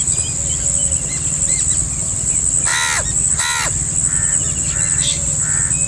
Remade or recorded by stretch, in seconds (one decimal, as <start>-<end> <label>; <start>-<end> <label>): 0.0-5.9 recorded